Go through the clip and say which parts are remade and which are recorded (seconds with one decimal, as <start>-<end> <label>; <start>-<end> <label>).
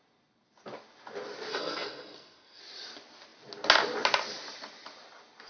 0.0-1.5 recorded; 1.5-2.6 remade; 2.6-5.5 recorded